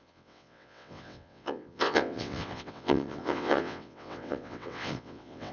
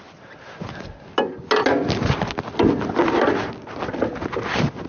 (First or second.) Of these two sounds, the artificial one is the first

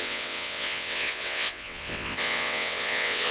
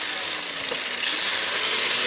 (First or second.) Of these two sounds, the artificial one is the first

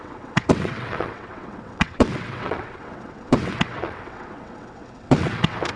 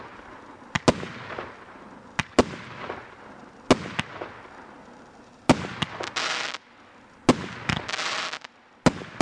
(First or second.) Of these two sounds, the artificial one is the first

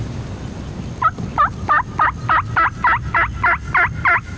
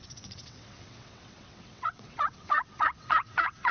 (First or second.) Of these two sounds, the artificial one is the second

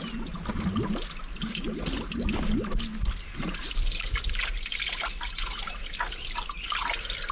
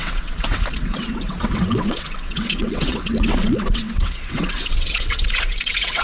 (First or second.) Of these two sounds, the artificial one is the second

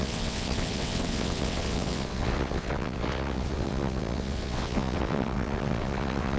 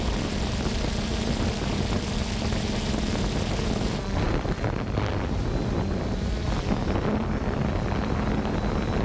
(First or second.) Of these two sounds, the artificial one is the first